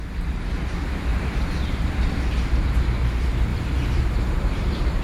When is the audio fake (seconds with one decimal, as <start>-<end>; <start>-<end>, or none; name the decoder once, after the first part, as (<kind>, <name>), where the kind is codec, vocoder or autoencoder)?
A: 3.5-5.0 (vocoder, BigVGAN v2)